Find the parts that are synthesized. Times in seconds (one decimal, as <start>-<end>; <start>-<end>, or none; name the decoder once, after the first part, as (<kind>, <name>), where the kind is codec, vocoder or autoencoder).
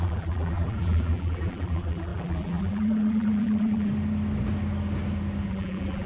0.0-3.9 (vocoder, BigVGAN v2); 5.5-6.1